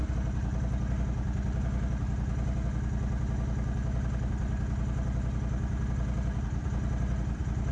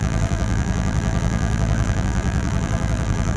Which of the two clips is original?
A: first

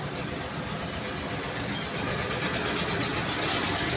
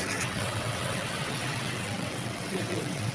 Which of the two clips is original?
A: first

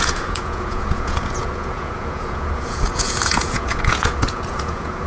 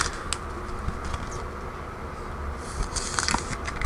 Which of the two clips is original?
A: second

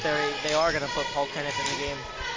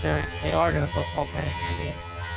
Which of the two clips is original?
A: first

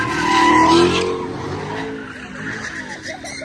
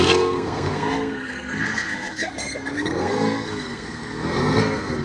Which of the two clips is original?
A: first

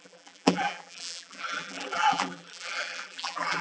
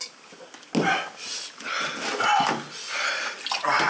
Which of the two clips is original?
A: second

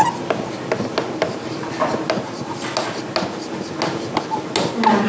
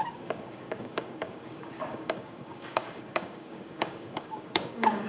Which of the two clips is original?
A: first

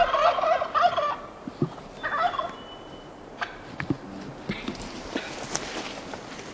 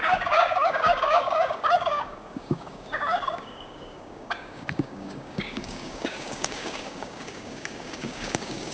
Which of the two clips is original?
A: first